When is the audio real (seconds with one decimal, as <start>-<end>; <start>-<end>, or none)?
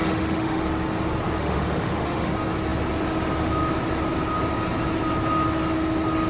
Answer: 0.6-1.4; 2.3-6.3